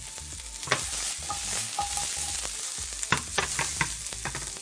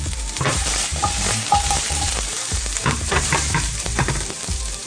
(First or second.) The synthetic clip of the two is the second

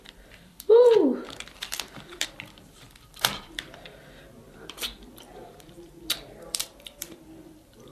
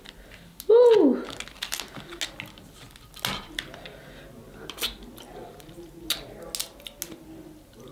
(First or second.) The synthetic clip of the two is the first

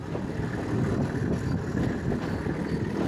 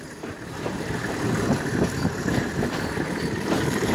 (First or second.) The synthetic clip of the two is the second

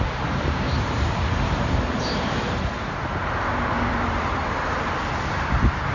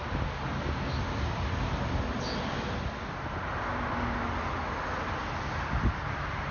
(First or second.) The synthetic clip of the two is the first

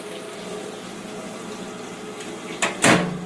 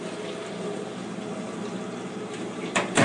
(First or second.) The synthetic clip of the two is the second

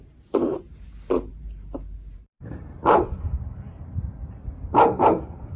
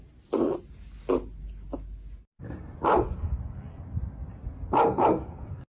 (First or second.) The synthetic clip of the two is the first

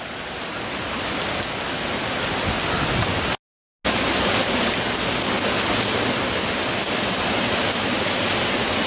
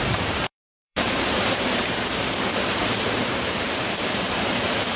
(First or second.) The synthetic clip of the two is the second